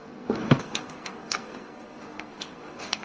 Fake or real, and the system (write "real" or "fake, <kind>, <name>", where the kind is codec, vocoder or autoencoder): fake, codec, SNAC